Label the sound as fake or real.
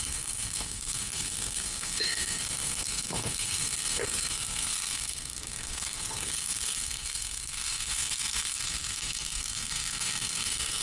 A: fake